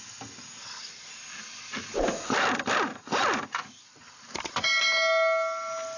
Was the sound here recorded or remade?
recorded